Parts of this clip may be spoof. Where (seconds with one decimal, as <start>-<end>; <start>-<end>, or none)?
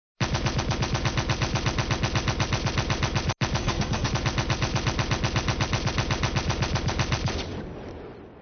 3.6-4.1